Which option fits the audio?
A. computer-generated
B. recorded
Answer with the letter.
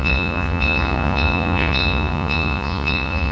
A